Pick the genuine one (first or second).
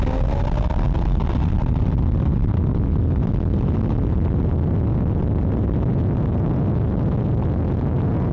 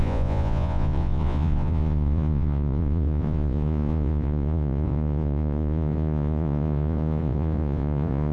first